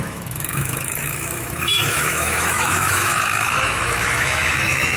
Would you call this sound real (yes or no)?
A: no